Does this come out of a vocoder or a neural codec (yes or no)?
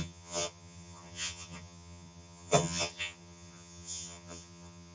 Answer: yes